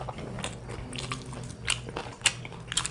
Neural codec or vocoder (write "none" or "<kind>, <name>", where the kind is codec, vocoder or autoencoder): none